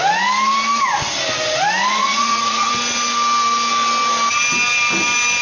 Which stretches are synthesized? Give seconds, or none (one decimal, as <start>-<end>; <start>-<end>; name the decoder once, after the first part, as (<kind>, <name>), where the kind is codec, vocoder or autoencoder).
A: 2.0-2.7 (vocoder, Vocos)

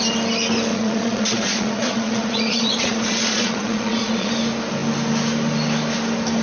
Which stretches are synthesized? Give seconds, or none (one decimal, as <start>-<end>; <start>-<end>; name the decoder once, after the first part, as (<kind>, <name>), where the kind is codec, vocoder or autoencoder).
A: 0.7-4.3 (vocoder, Vocos)

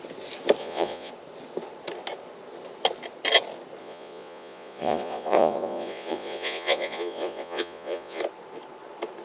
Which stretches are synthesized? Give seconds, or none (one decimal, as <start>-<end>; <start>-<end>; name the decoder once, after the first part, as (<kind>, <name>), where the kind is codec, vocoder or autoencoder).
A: 0.6-1.1 (vocoder, Vocos); 3.8-8.2

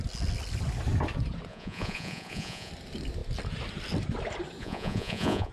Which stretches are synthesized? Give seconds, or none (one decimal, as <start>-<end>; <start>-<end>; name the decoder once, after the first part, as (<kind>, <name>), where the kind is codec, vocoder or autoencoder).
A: 1.5-2.7 (vocoder, Vocos); 4.6-5.5

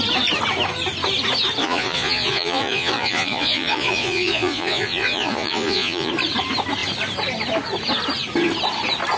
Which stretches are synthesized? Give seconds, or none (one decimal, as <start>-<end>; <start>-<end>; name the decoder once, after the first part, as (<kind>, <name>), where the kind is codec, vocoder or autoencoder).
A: 1.6-6.1 (vocoder, Vocos)

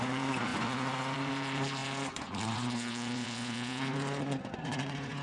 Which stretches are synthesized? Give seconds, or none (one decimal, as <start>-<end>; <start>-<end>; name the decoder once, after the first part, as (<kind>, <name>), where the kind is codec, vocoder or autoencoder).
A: 0.0-5.2 (vocoder, Vocos)